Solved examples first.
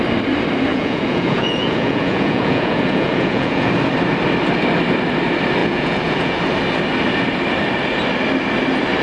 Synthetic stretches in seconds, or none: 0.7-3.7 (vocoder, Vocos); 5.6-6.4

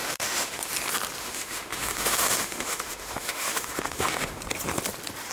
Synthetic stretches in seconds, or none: 0.0-0.7 (autoencoder, DAC-VAE); 1.2-4.4

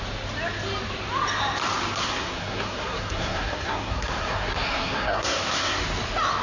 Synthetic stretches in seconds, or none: 2.0-5.8 (codec, SNAC)

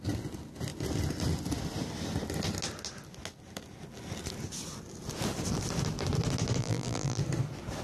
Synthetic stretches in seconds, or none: 6.6-7.2 (vocoder, BigVGAN v2)

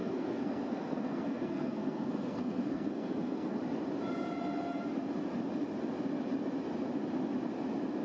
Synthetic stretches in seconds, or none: 0.0-3.6 (codec, SNAC)

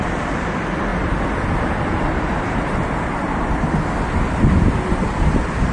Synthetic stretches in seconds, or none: none

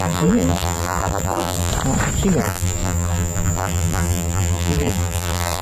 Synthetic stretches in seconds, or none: 0.0-1.7 (vocoder, BigVGAN v2); 2.4-5.6